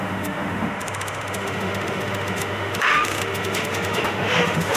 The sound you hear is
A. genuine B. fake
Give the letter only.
B